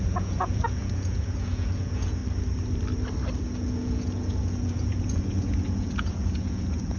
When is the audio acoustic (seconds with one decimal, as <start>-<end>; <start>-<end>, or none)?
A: 2.2-3.4